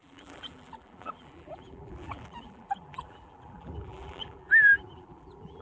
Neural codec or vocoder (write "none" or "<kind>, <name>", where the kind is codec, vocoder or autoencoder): vocoder, BigVGAN v2